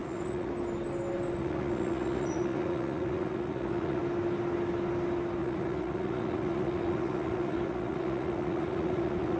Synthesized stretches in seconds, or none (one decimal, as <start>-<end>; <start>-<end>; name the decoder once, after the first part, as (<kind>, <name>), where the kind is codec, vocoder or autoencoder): 0.0-0.5 (vocoder, Vocos); 1.4-4.0; 5.4-9.4